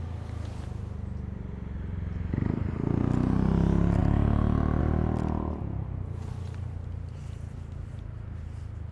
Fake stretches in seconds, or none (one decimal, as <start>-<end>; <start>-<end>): none